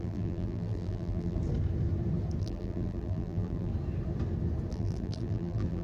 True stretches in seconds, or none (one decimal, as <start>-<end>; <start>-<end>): 1.4-2.4; 3.7-4.7